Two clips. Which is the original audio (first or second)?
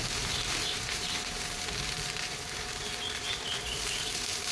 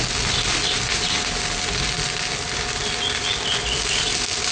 second